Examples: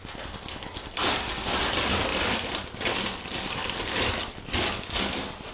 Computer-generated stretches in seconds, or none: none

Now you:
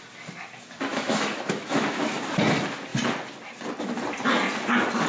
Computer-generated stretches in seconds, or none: 0.9-2.0 (autoencoder, DAC-VAE)

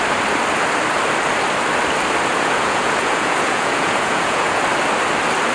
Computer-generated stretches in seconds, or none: 2.3-4.6 (vocoder, Vocos)

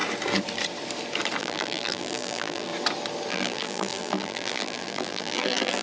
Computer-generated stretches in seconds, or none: 1.4-2.7 (vocoder, BigVGAN v2); 3.3-5.8

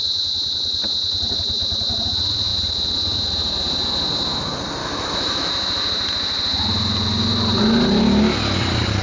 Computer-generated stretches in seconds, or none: 4.8-5.5 (autoencoder, DAC-VAE)

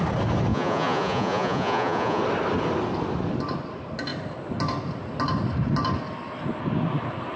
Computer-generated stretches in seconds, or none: 0.5-2.2 (vocoder, Vocos)